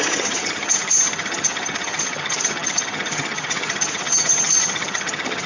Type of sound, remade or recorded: remade